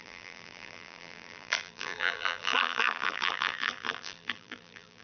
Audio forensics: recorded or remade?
remade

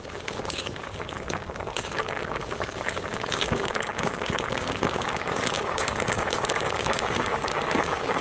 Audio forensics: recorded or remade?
remade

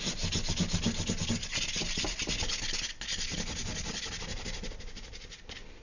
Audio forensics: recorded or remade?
recorded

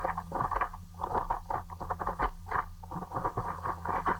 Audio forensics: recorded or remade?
recorded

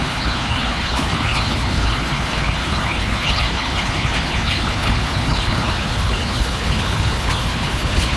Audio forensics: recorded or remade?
remade